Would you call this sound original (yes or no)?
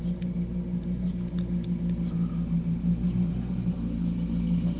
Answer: yes